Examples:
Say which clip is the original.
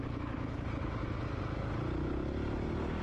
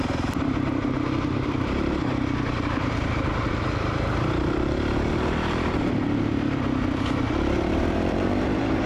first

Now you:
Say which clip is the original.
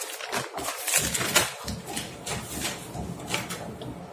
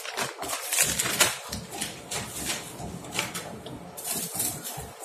first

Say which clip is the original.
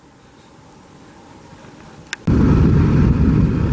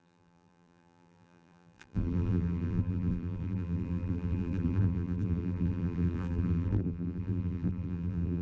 first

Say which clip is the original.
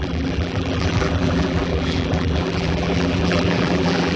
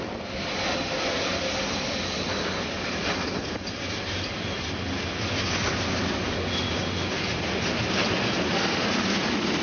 second